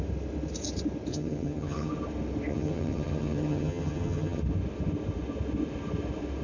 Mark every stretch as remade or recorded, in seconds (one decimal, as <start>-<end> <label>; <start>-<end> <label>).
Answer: 0.0-1.1 recorded; 1.1-1.9 remade; 1.9-2.5 recorded; 2.5-4.4 remade; 4.4-6.4 recorded